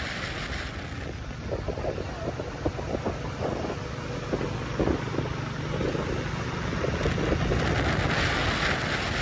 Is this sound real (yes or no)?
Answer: yes